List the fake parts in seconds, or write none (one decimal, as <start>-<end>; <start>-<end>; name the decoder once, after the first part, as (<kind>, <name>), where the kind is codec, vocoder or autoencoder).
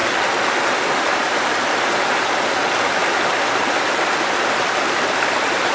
none